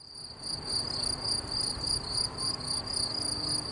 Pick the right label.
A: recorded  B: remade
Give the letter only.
A